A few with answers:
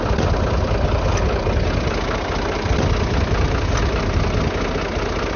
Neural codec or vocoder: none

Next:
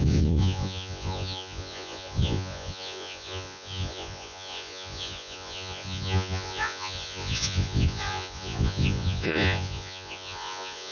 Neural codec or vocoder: vocoder, Vocos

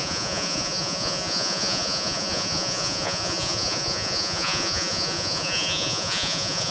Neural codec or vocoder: vocoder, Vocos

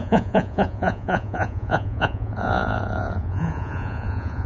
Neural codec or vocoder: vocoder, Vocos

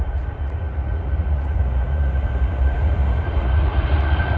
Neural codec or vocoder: vocoder, Vocos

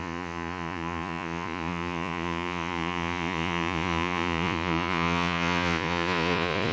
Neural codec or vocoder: vocoder, Vocos